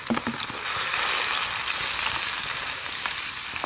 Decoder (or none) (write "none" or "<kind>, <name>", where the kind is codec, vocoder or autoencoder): none